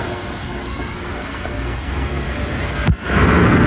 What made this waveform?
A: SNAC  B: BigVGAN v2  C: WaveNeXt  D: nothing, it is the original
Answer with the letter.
A